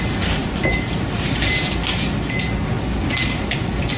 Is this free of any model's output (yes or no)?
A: yes